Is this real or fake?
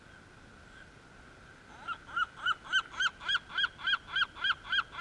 real